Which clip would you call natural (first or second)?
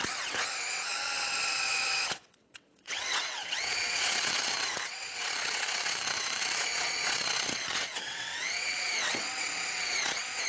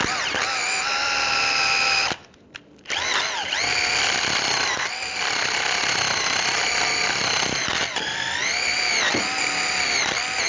second